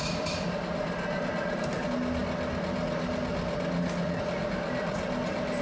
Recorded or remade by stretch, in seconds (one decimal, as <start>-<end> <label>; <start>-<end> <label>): 0.0-5.6 recorded